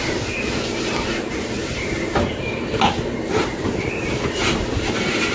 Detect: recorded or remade recorded